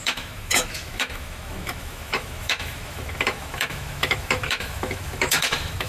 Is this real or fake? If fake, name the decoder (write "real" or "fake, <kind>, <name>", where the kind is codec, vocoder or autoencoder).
fake, autoencoder, DAC-VAE